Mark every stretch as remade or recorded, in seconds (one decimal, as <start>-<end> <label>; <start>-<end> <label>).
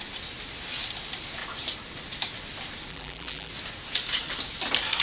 0.0-2.9 recorded; 2.9-3.5 remade; 3.5-5.0 recorded